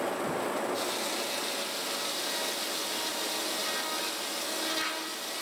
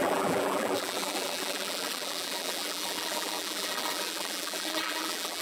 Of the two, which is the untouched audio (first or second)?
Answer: first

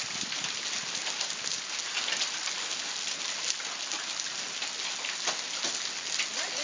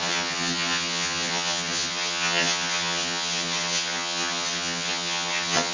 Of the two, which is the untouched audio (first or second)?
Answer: first